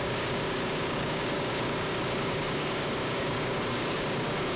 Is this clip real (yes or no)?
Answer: no